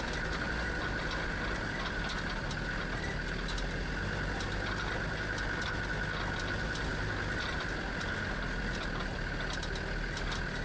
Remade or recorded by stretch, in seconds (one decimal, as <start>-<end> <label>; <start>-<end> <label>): 0.0-10.6 recorded